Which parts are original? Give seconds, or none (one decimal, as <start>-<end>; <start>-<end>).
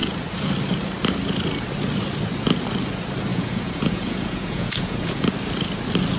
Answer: 0.0-3.3; 5.3-6.2